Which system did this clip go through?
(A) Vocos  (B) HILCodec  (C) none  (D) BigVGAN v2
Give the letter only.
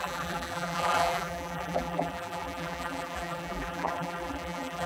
D